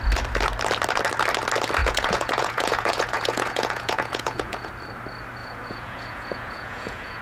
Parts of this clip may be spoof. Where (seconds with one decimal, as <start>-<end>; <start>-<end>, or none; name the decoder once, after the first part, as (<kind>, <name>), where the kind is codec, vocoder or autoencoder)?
1.8-4.7 (vocoder, Vocos); 5.4-7.2